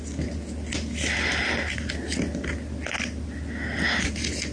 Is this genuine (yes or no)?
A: yes